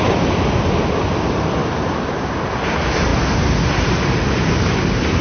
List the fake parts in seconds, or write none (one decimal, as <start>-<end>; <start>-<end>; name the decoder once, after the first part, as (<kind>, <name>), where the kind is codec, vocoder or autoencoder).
none